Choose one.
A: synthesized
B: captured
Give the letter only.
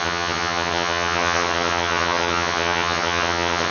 A